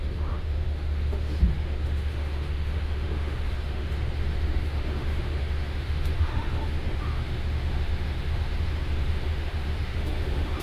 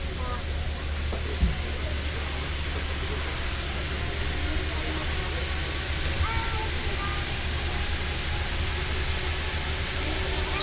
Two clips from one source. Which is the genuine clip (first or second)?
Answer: second